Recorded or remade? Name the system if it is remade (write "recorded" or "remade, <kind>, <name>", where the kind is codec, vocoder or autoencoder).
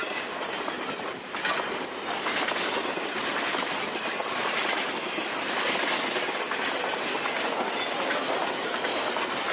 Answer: recorded